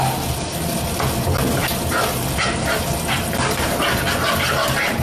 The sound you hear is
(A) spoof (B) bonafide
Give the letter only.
B